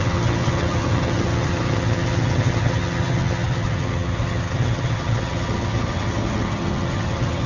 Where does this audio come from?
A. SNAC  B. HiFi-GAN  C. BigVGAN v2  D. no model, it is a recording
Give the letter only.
B